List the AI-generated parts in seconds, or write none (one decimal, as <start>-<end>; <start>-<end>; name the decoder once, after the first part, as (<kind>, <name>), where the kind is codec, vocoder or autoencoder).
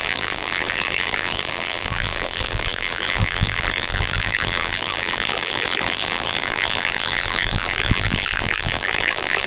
0.0-9.5 (vocoder, BigVGAN v2)